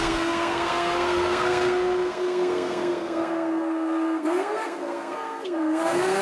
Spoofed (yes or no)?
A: yes